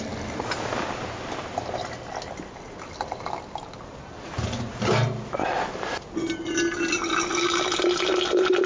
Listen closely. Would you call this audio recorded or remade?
recorded